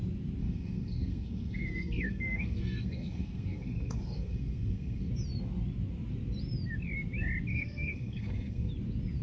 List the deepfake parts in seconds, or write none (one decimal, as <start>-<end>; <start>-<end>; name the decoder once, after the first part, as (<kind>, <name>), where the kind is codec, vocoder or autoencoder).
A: 0.4-5.1 (codec, SNAC); 7.5-8.7